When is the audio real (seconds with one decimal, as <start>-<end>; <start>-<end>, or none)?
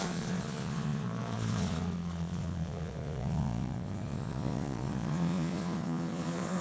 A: none